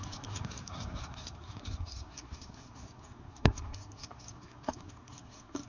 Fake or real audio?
fake